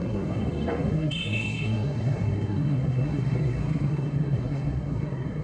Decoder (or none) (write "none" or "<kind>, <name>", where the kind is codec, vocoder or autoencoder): codec, SNAC